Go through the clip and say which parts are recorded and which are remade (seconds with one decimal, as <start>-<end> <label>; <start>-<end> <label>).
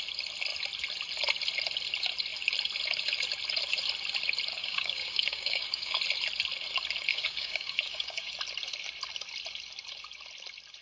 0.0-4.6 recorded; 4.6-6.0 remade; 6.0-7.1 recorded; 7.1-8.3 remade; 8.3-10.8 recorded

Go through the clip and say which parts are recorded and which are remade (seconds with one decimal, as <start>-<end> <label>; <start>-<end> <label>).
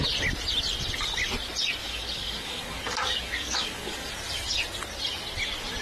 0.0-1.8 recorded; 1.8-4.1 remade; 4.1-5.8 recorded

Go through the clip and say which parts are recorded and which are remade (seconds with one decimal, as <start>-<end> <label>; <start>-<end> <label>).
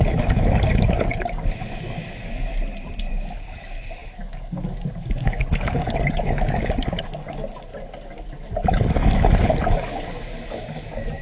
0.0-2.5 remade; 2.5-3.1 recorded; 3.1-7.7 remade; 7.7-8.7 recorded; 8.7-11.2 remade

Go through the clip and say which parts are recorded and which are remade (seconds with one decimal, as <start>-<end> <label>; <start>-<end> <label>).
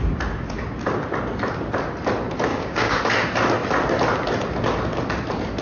0.0-2.5 recorded; 2.5-3.0 remade; 3.0-5.6 recorded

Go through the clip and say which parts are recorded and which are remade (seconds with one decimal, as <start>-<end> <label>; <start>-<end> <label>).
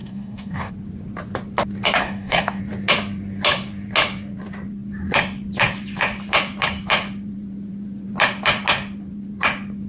0.0-0.7 remade; 0.7-2.0 recorded; 2.0-2.6 remade; 2.6-9.9 recorded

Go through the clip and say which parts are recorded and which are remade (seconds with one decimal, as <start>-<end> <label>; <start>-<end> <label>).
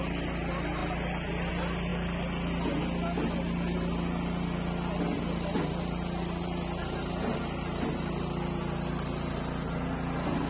0.0-10.5 recorded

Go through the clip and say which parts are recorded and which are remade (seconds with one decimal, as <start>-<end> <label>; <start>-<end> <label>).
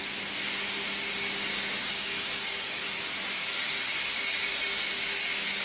0.0-1.1 recorded; 1.1-2.8 remade; 2.8-3.3 recorded; 3.3-5.6 remade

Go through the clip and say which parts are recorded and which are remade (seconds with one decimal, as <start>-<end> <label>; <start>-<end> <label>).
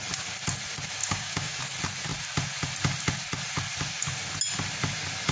0.0-1.0 recorded; 1.0-1.6 remade; 1.6-5.3 recorded